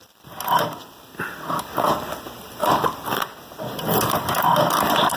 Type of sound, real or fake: fake